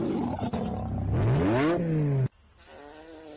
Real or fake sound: real